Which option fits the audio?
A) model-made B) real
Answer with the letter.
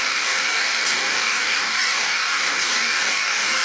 A